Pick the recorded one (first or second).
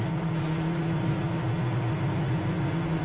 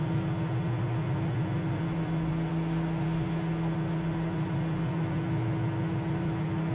second